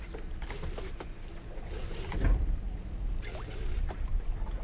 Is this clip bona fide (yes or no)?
yes